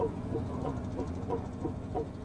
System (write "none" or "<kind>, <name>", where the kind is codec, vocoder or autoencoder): vocoder, Vocos